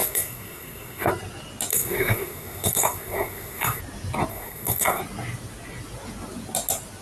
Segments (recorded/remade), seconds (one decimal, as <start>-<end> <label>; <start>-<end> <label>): 0.0-1.1 remade; 1.1-1.7 recorded; 1.7-3.8 remade; 3.8-4.3 recorded; 4.3-5.0 remade; 5.0-7.0 recorded